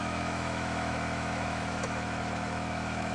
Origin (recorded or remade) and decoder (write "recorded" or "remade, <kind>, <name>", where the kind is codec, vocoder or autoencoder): remade, autoencoder, DAC-VAE